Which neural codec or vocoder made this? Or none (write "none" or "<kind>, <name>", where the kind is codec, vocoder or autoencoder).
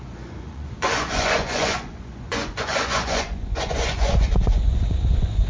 vocoder, Vocos